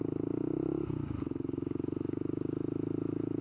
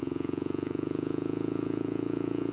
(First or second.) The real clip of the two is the first